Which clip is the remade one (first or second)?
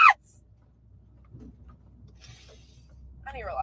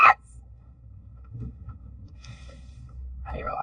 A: second